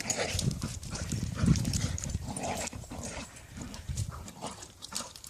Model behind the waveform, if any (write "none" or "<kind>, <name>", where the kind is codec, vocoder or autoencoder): vocoder, BigVGAN v2